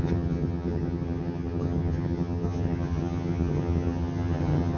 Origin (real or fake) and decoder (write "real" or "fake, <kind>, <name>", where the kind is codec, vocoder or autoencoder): fake, vocoder, HiFi-GAN